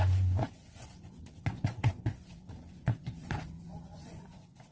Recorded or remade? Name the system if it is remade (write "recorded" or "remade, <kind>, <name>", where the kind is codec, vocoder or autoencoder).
remade, vocoder, Vocos